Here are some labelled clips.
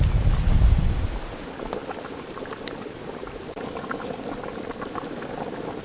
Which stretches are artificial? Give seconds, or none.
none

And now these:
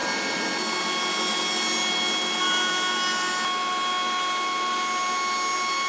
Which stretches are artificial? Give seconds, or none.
none

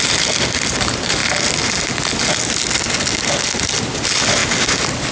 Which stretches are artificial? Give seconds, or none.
none

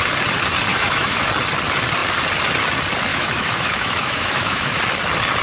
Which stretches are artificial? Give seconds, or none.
0.7-1.3 (autoencoder, DAC-VAE); 3.1-4.8

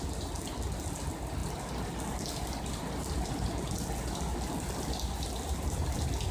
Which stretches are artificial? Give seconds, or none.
none